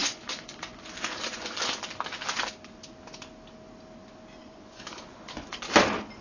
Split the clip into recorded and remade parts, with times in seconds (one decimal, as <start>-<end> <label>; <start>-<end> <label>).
0.0-1.6 remade; 1.6-4.4 recorded; 4.4-5.6 remade; 5.6-6.2 recorded